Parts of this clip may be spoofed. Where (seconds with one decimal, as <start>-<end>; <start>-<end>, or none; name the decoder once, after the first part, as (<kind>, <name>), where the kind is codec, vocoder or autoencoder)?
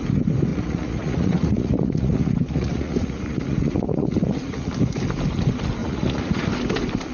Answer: 0.5-4.8 (vocoder, Vocos); 5.8-6.5